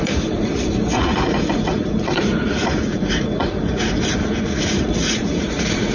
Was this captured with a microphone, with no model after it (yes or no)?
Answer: no